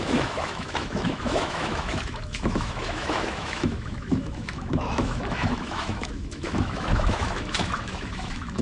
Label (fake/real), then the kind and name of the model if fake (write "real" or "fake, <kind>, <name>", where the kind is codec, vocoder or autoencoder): fake, autoencoder, DAC-VAE